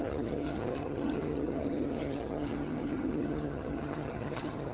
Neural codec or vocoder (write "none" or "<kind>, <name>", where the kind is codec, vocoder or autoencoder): vocoder, HiFi-GAN